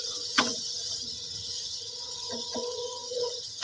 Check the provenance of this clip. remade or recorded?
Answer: remade